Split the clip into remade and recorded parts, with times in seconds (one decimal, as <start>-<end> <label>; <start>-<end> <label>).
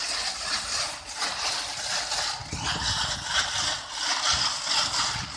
0.0-5.4 recorded